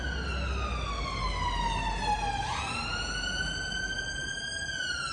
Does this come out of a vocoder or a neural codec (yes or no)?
no